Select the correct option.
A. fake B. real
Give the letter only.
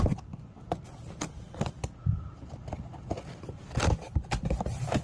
B